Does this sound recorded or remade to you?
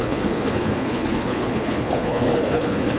remade